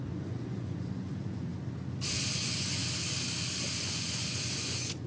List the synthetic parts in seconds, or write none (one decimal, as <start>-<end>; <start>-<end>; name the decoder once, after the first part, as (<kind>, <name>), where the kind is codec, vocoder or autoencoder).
0.0-1.5 (vocoder, Vocos); 2.3-2.8; 3.8-5.1